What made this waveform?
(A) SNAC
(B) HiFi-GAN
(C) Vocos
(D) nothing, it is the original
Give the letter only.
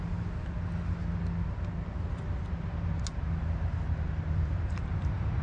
D